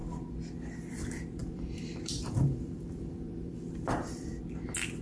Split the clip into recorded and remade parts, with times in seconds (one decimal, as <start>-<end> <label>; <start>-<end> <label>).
0.0-1.4 recorded; 1.4-4.4 remade; 4.4-5.0 recorded